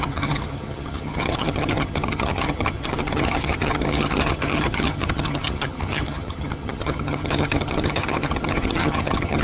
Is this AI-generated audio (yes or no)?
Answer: yes